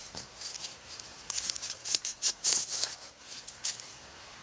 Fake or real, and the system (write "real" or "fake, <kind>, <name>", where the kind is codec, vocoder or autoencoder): fake, codec, SNAC